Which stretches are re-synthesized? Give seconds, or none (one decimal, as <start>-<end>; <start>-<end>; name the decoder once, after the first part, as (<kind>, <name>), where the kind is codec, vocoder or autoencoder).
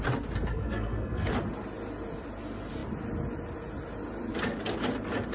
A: 0.5-1.3 (codec, SNAC)